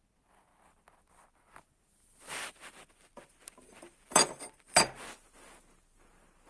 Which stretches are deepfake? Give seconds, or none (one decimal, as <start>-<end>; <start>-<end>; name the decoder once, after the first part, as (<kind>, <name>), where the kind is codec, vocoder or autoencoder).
none